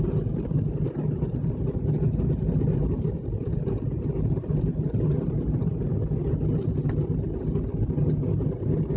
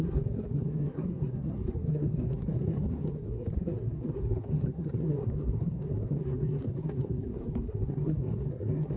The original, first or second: first